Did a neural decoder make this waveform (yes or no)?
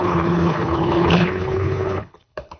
yes